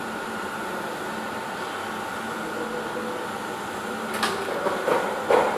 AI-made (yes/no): no